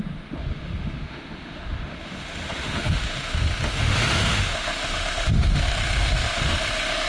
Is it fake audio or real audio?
fake